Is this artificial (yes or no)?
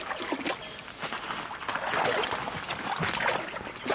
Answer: no